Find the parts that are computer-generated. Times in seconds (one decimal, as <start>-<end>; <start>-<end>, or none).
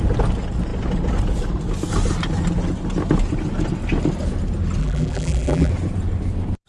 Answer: 4.8-5.7